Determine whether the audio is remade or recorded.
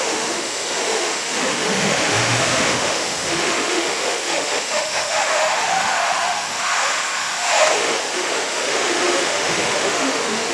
remade